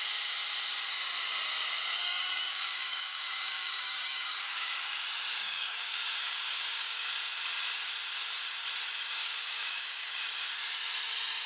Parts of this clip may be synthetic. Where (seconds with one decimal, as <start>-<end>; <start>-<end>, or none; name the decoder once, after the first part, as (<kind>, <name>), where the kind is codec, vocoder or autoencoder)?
2.0-4.7 (codec, DAC); 5.4-7.1; 9.2-10.1